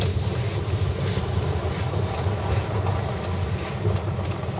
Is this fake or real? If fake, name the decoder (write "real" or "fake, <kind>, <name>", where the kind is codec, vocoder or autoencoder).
real